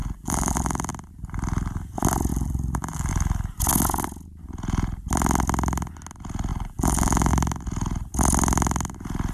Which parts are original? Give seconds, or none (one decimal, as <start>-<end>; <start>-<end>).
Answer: 0.9-2.3; 3.1-6.5; 7.3-9.3